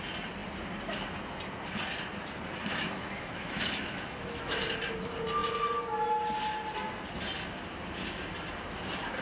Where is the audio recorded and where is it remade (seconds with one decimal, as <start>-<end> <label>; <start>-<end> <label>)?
0.0-2.6 recorded; 2.6-4.6 remade; 4.6-9.2 recorded